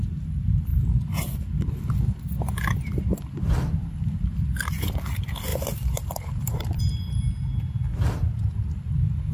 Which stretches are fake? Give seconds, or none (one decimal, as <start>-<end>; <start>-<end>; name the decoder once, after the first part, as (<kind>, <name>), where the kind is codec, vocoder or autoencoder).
5.5-6.8 (vocoder, BigVGAN v2)